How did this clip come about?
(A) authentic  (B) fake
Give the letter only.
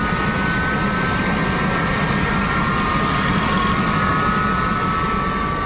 A